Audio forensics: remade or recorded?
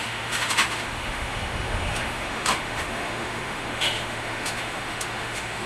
remade